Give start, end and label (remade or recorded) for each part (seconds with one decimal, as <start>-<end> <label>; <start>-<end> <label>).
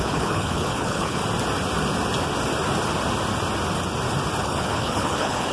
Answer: 0.0-1.2 remade; 1.2-4.4 recorded; 4.4-5.5 remade